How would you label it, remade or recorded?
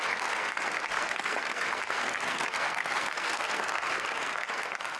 remade